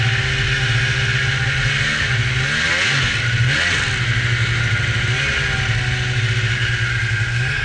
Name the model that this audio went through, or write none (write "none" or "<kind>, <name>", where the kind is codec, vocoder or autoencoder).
none